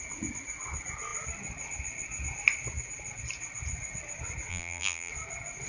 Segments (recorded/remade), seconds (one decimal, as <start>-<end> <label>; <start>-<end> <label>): 0.0-4.5 recorded; 4.5-5.1 remade; 5.1-5.7 recorded